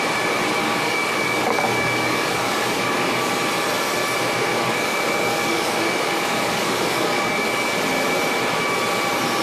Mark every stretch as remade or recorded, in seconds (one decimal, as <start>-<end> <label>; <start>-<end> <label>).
0.0-0.6 recorded; 0.6-3.3 remade; 3.3-4.5 recorded; 4.5-7.7 remade; 7.7-9.4 recorded